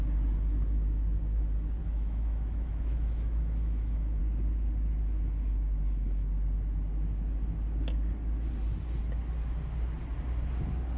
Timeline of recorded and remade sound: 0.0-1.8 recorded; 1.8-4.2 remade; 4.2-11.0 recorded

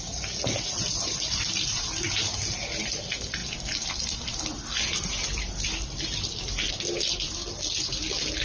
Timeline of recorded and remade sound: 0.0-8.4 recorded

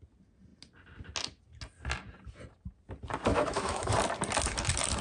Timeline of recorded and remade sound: 0.0-3.3 recorded; 3.3-3.9 remade; 3.9-5.0 recorded